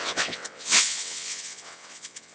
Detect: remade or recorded remade